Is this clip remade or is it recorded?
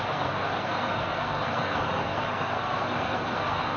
remade